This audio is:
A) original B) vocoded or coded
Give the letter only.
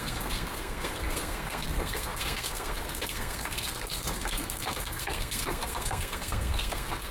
B